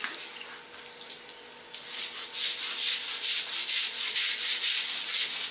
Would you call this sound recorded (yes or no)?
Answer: yes